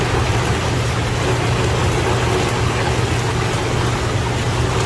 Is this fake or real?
real